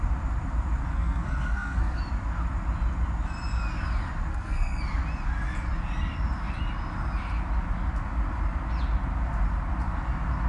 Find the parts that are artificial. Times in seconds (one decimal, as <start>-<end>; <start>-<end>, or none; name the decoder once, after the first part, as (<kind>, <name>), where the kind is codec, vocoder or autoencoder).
0.9-2.0 (codec, SNAC); 4.3-4.8